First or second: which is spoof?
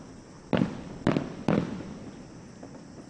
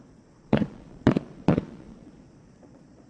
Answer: second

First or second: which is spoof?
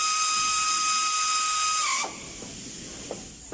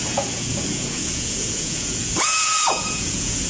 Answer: second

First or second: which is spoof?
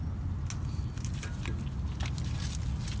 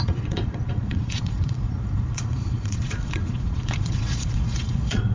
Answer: second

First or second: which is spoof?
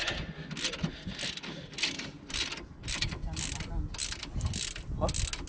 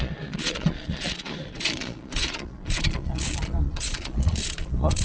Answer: second